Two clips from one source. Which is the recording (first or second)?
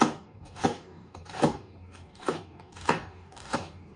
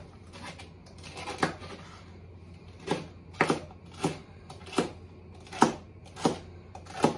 second